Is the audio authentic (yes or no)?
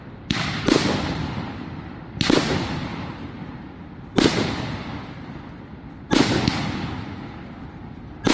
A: yes